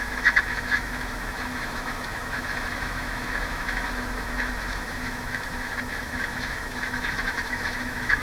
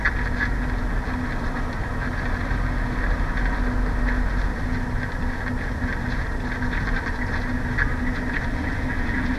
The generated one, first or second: first